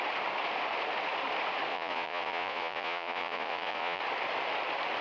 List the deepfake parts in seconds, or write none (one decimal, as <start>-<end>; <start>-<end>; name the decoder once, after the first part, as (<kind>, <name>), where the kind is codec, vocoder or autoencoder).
1.7-4.0 (vocoder, Vocos)